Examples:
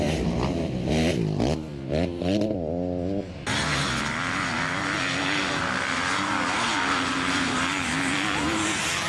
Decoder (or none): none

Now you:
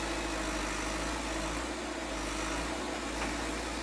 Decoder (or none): none